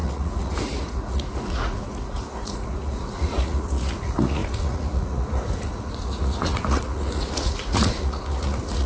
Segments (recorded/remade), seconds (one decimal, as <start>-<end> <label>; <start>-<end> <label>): 0.0-8.9 remade